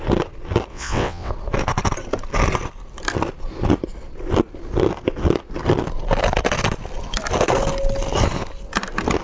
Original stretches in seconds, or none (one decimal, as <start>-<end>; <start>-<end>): 0.0-0.7; 1.3-9.2

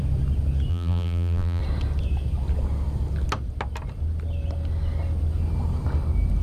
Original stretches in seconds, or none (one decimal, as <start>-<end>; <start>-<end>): 0.0-0.7; 1.6-6.4

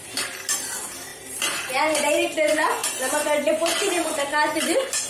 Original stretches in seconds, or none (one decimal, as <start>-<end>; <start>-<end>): 0.0-5.1

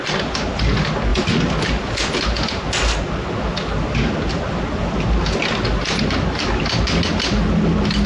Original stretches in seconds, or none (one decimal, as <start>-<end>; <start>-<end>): 0.0-8.1